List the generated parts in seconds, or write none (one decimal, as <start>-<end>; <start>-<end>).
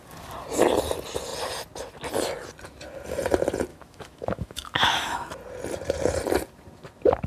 3.7-5.3